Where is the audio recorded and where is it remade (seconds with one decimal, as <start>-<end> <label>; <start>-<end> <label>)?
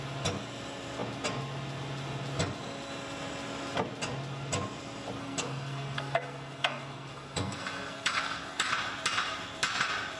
0.0-5.2 recorded; 5.2-8.7 remade; 8.7-10.2 recorded